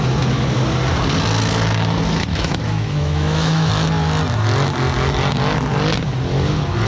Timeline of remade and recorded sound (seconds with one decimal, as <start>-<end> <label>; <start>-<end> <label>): 0.0-2.3 recorded; 2.3-3.7 remade; 3.7-6.9 recorded